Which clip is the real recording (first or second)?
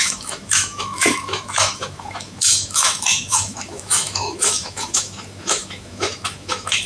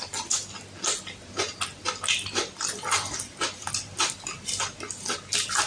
second